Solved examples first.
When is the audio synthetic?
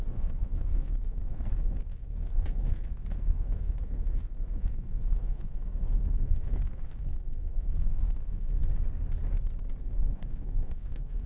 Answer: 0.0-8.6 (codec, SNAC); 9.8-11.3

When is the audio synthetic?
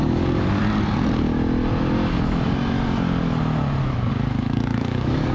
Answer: 0.0-0.6 (codec, DAC); 3.8-5.3